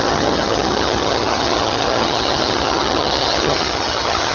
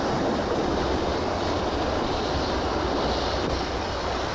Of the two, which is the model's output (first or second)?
first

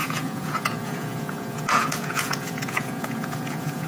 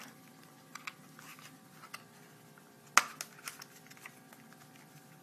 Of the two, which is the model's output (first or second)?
first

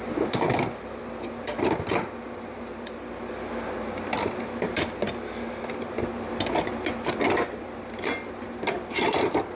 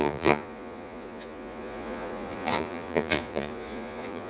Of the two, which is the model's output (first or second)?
second